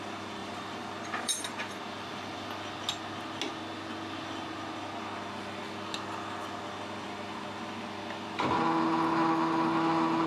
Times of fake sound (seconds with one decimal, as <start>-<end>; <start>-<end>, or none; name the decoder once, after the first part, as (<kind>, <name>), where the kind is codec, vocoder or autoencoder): 0.4-2.5 (vocoder, BigVGAN v2)